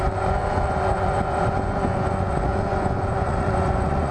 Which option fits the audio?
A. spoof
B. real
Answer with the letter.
A